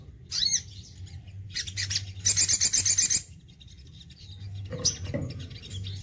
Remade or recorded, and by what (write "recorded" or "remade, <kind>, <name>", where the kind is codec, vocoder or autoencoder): recorded